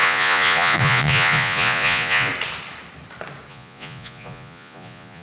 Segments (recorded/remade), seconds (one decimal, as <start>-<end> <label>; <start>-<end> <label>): 0.0-2.3 remade; 2.3-3.5 recorded; 3.5-5.2 remade